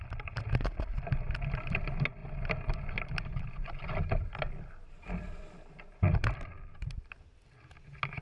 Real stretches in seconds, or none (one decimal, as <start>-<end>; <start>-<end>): 0.0-2.2; 7.1-8.2